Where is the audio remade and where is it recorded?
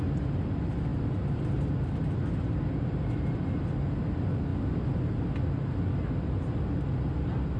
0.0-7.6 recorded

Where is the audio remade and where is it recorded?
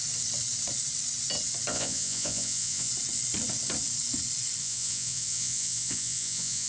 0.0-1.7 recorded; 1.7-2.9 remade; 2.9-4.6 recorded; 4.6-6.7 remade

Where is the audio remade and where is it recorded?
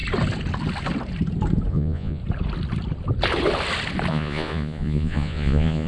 0.0-1.7 recorded; 1.7-2.2 remade; 2.2-4.1 recorded; 4.1-5.9 remade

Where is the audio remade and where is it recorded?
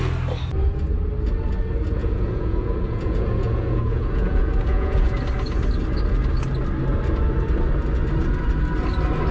0.0-2.0 recorded; 2.0-5.2 remade; 5.2-9.3 recorded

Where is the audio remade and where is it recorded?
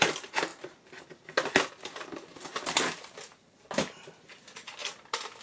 0.0-5.4 recorded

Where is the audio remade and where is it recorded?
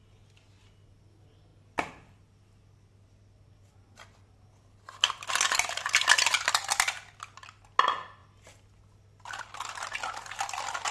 0.0-10.9 recorded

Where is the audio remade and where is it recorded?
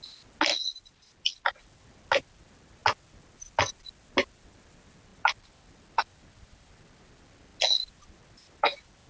0.0-9.1 recorded